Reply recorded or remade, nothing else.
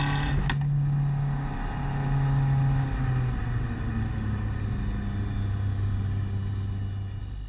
recorded